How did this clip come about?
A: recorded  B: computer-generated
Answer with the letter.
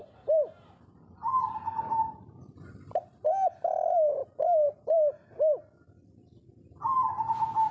A